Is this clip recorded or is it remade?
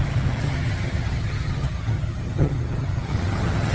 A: remade